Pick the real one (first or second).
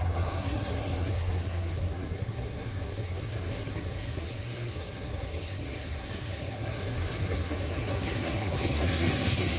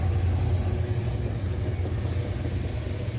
second